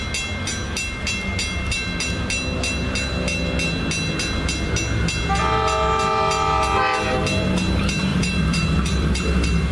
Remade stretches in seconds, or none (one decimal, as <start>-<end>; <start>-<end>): 8.1-9.7